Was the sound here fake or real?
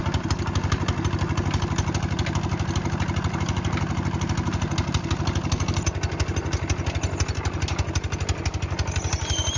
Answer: real